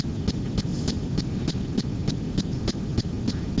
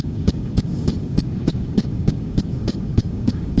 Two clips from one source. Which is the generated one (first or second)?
second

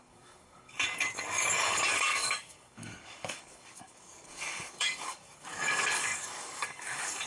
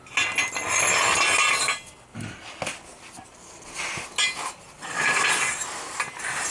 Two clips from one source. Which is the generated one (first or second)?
first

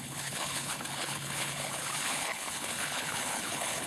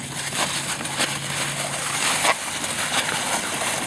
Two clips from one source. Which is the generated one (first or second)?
first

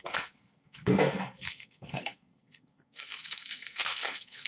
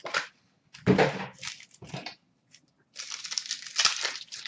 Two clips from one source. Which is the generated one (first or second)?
first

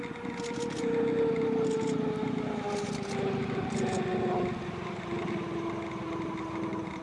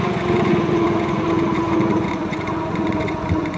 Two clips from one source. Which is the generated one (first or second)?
second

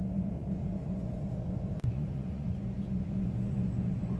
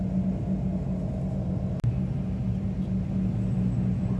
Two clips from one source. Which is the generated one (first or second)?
first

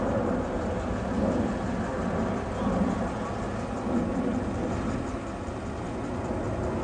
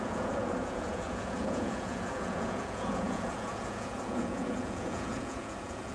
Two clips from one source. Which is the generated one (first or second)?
second